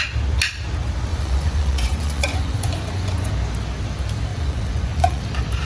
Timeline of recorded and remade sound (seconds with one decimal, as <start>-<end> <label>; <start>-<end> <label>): 0.0-1.1 recorded; 1.1-3.3 remade; 3.3-4.3 recorded; 4.3-5.2 remade; 5.2-5.7 recorded